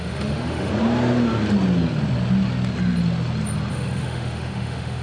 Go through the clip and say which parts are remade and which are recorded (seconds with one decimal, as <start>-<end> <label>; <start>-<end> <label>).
0.0-0.7 remade; 0.7-3.7 recorded; 3.7-5.0 remade